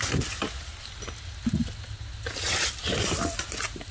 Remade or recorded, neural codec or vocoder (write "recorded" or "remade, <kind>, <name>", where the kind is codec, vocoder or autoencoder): recorded